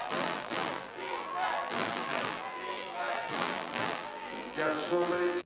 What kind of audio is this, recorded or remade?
remade